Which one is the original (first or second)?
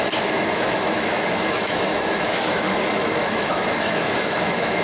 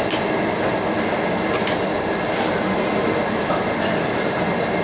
second